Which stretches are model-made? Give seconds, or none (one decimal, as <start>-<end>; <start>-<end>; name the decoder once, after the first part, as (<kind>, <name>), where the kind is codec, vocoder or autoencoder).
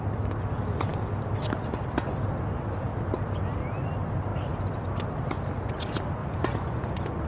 6.2-7.3 (vocoder, Vocos)